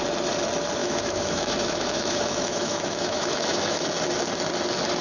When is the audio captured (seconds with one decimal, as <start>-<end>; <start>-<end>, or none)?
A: 0.0-0.8; 3.8-5.0

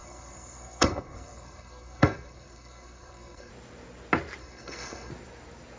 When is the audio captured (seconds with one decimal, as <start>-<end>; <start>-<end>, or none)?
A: 3.5-4.4; 5.1-5.8

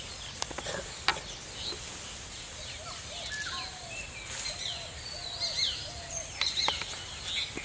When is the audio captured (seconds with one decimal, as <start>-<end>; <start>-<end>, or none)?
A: 0.0-7.6

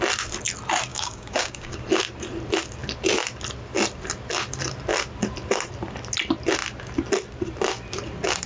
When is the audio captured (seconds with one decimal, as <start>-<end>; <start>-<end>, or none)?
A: 0.0-0.9; 1.8-8.5

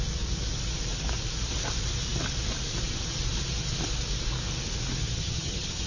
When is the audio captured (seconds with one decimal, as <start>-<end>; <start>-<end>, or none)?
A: 0.0-5.0

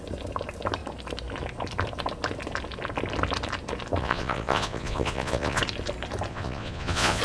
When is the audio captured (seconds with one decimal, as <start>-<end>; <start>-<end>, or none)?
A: 0.0-4.0; 5.6-6.3